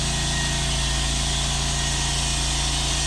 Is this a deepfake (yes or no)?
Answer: no